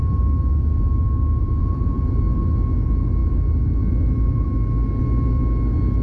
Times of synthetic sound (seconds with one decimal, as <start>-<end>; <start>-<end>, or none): 1.6-2.2